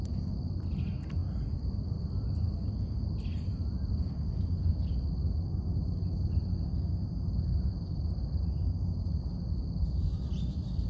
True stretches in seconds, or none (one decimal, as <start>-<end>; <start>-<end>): 0.0-10.9